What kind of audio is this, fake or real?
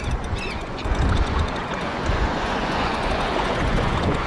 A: fake